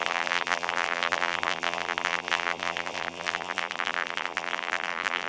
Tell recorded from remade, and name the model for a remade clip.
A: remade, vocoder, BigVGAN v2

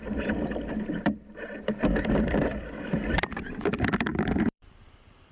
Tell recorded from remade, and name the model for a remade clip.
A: remade, vocoder, BigVGAN v2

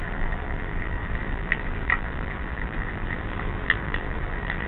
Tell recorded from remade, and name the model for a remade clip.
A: remade, vocoder, BigVGAN v2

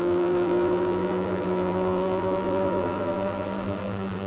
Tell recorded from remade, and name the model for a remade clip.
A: remade, vocoder, BigVGAN v2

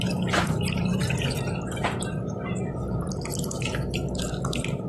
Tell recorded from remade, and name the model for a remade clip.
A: remade, vocoder, BigVGAN v2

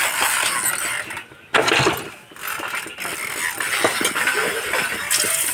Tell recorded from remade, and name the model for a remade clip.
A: recorded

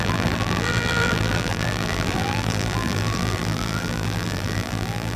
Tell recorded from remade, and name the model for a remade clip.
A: remade, vocoder, BigVGAN v2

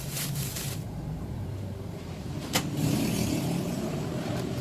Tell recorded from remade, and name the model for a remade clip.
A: remade, vocoder, BigVGAN v2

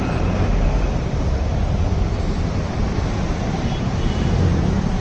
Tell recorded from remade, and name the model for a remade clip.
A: remade, vocoder, BigVGAN v2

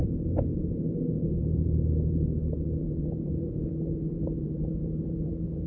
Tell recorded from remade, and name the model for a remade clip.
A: remade, vocoder, BigVGAN v2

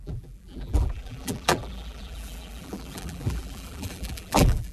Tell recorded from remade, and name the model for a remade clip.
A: remade, vocoder, BigVGAN v2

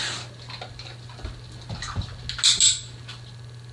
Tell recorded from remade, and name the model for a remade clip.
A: recorded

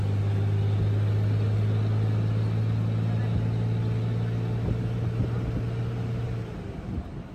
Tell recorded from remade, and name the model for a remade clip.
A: recorded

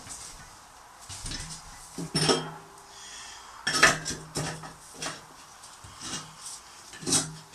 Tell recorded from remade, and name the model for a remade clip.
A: recorded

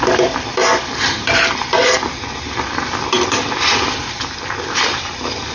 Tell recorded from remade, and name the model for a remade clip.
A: remade, vocoder, BigVGAN v2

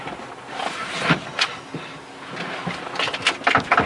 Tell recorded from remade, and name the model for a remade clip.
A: recorded